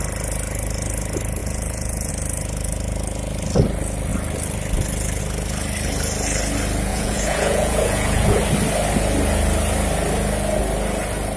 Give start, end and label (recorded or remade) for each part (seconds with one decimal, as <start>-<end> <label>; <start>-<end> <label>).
0.0-1.4 recorded; 1.4-2.1 remade; 2.1-6.9 recorded; 6.9-8.4 remade; 8.4-11.4 recorded